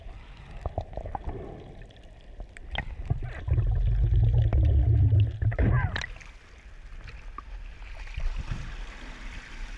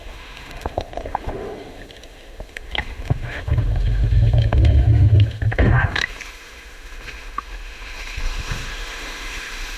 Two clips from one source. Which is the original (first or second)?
first